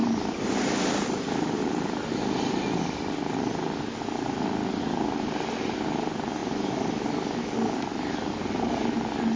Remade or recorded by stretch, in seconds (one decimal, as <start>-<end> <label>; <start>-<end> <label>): 0.0-9.4 recorded